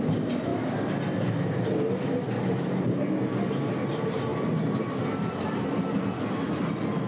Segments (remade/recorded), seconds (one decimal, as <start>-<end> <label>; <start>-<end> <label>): 0.0-7.1 recorded